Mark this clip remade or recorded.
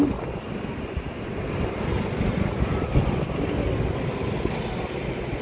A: recorded